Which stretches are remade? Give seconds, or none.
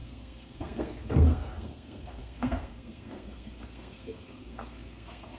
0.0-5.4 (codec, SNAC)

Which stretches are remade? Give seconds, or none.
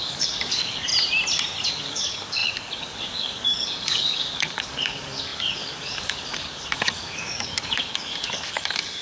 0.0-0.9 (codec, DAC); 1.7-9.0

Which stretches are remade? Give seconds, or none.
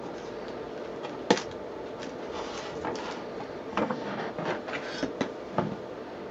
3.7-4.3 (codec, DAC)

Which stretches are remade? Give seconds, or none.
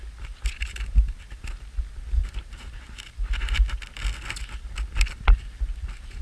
2.2-3.4 (vocoder, BigVGAN v2)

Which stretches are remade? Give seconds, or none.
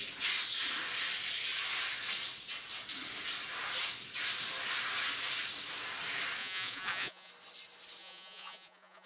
6.4-7.3 (vocoder, Vocos); 8.0-9.1